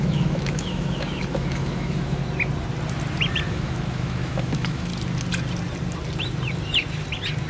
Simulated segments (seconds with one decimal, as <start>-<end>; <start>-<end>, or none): 0.0-2.2; 3.5-4.9